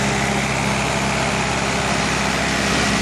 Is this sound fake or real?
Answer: real